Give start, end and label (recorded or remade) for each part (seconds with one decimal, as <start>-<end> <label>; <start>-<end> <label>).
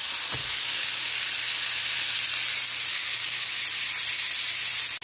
0.0-0.4 recorded; 0.4-1.1 remade; 1.1-2.9 recorded; 2.9-3.5 remade; 3.5-5.0 recorded